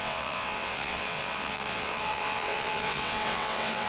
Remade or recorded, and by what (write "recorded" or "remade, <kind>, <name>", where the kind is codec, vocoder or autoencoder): remade, vocoder, WaveNeXt